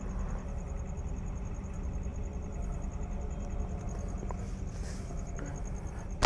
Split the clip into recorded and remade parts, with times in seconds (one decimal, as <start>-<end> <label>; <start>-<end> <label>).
0.0-6.3 recorded

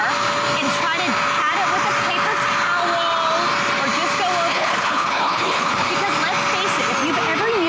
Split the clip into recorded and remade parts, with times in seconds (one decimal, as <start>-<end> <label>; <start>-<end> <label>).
0.0-4.5 recorded; 4.5-5.9 remade; 5.9-7.7 recorded

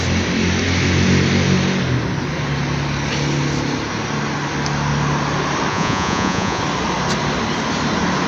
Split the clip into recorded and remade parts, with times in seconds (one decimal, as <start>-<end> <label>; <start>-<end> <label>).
0.0-5.7 recorded; 5.7-6.6 remade; 6.6-8.3 recorded

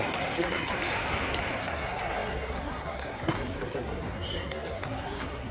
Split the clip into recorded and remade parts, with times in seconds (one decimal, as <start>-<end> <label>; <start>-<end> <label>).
0.0-0.7 remade; 0.7-1.6 recorded; 1.6-5.5 remade

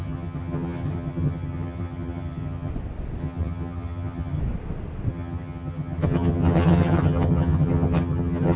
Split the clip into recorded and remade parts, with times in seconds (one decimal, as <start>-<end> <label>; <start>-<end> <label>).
0.0-2.7 remade; 2.7-3.2 recorded; 3.2-4.4 remade; 4.4-5.1 recorded; 5.1-8.6 remade

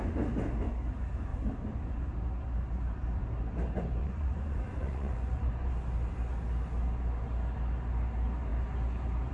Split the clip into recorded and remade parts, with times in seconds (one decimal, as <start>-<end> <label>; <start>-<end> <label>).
0.0-4.0 recorded; 4.0-5.7 remade; 5.7-9.3 recorded

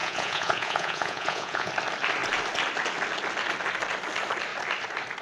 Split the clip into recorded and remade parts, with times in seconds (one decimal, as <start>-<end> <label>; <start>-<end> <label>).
0.0-1.7 remade; 1.7-5.2 recorded

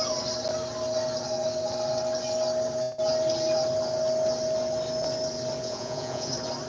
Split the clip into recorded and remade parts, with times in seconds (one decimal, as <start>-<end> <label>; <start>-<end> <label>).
0.0-5.6 recorded; 5.6-6.3 remade; 6.3-6.7 recorded